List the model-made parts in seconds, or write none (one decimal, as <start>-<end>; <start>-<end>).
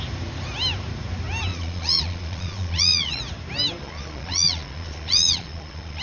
1.5-3.2; 3.8-6.0